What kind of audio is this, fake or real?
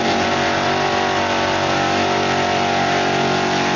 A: real